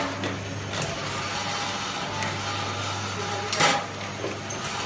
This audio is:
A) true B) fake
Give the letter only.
A